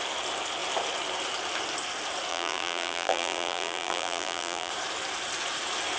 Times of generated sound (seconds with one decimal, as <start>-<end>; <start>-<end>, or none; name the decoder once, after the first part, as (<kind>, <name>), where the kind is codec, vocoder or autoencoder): 2.3-4.7 (vocoder, BigVGAN v2)